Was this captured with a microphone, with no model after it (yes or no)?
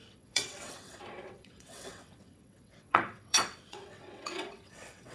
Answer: no